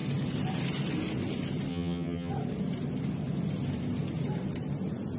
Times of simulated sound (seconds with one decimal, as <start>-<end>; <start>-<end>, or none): 1.7-2.3